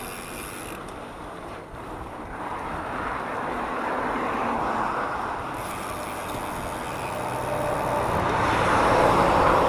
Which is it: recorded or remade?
recorded